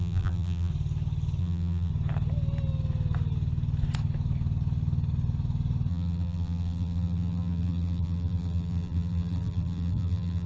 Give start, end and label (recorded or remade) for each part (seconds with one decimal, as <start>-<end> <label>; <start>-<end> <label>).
0.0-0.7 remade; 0.7-1.4 recorded; 1.4-1.9 remade; 1.9-5.9 recorded; 5.9-10.5 remade